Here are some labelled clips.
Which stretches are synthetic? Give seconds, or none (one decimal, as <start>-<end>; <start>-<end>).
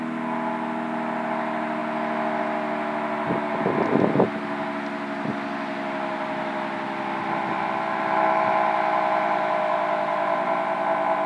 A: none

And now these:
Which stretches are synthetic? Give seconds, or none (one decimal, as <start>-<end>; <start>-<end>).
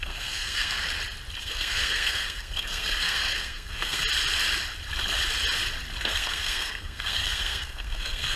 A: 0.0-0.8; 1.4-4.0; 6.0-8.4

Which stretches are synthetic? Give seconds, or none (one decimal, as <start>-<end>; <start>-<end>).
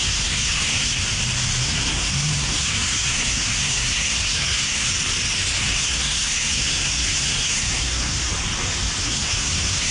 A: 0.0-1.0; 1.6-4.9; 5.6-8.3; 9.0-9.9